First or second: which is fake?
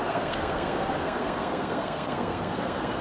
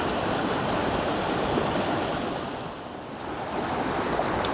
first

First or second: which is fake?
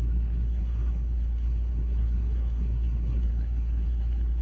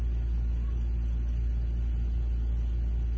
first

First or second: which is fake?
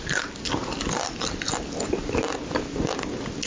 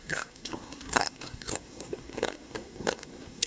second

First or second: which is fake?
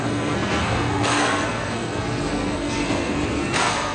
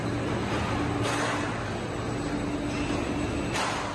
first